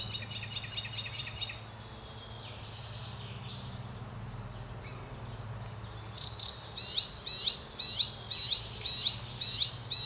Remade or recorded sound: recorded